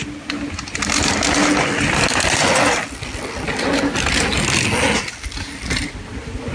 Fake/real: real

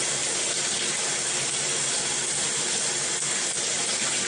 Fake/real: real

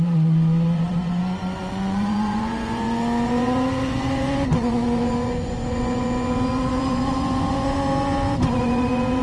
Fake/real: fake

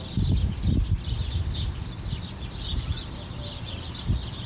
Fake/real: real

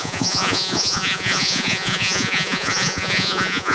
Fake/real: fake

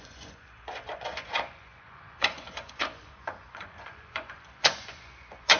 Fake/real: fake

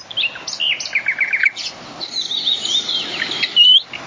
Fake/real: real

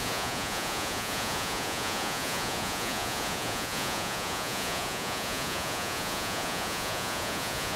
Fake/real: fake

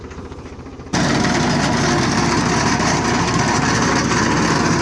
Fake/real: real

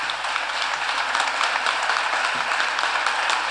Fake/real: real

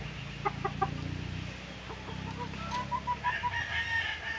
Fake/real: real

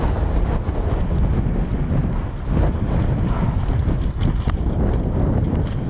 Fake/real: real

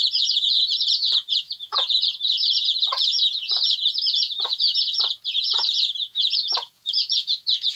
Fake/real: fake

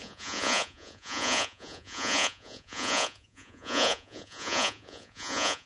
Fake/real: fake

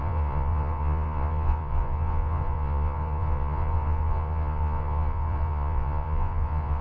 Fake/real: fake